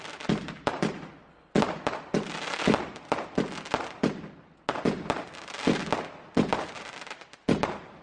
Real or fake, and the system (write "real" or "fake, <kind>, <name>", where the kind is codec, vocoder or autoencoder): real